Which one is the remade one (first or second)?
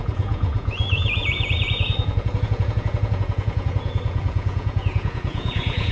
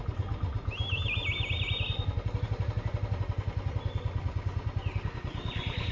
first